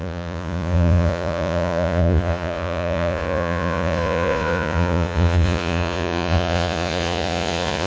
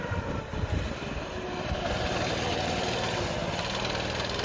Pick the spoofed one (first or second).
first